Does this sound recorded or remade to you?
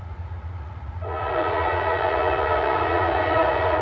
remade